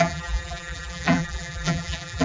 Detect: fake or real fake